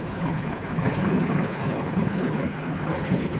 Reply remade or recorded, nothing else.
remade